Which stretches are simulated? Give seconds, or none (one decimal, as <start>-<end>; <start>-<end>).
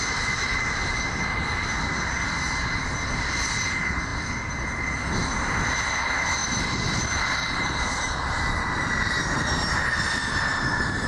4.1-4.7; 6.4-9.4